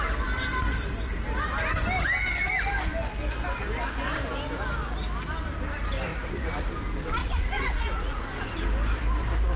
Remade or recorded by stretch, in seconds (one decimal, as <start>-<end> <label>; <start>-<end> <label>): 0.0-6.1 recorded; 6.1-6.7 remade; 6.7-7.2 recorded; 7.2-8.2 remade; 8.2-9.6 recorded